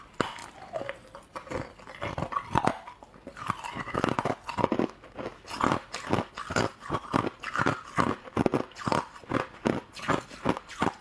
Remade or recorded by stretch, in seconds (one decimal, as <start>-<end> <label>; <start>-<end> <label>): 0.0-0.4 recorded; 0.4-4.1 remade; 4.1-8.5 recorded; 8.5-10.0 remade; 10.0-11.0 recorded